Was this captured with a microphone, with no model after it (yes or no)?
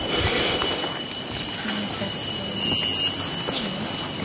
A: yes